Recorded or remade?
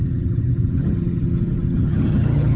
remade